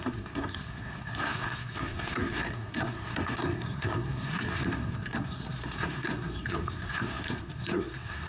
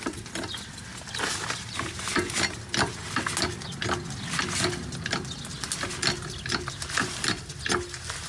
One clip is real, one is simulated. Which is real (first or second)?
second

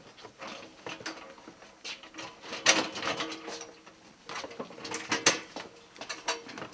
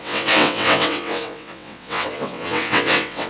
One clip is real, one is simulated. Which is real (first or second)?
first